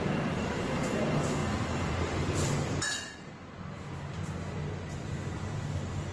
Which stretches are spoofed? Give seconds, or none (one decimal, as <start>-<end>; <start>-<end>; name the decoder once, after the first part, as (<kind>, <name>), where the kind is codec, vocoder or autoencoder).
none

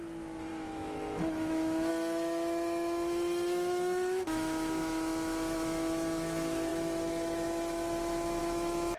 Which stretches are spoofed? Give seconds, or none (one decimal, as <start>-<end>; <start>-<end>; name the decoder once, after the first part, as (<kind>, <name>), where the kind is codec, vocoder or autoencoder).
0.0-9.0 (autoencoder, DAC-VAE)

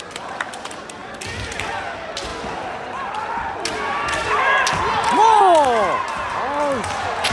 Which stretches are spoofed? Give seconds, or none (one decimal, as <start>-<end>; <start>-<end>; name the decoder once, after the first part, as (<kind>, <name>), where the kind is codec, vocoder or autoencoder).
none

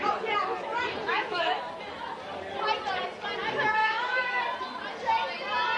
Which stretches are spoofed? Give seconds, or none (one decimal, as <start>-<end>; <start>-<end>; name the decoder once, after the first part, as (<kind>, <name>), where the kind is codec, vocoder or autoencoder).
1.1-1.6 (autoencoder, DAC-VAE); 3.8-4.4

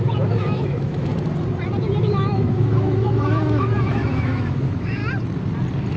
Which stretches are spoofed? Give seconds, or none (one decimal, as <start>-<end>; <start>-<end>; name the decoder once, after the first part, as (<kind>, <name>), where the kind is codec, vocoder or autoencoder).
0.0-1.1 (autoencoder, DAC-VAE); 2.0-5.0